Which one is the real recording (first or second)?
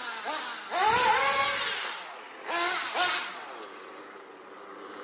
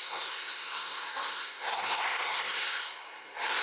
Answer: first